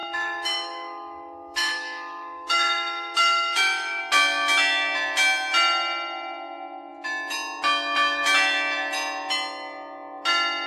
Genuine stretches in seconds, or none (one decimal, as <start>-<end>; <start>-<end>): 4.0-10.7